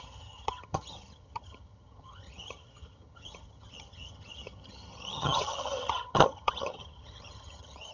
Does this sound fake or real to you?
fake